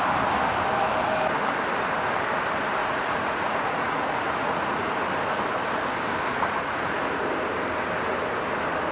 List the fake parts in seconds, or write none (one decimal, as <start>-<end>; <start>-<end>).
2.8-4.9; 6.3-7.2